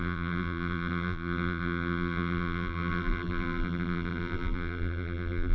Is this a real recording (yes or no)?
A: no